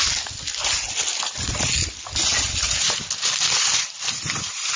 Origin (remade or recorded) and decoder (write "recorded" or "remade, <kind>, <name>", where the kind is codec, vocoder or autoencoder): recorded